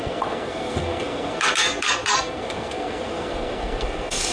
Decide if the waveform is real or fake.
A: fake